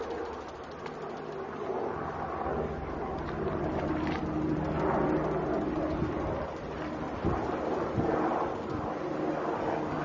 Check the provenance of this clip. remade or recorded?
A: recorded